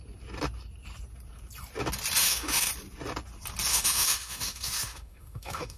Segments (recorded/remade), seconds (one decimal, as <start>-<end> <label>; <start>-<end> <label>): 0.0-2.2 recorded; 2.2-2.7 remade; 2.7-3.7 recorded; 3.7-5.8 remade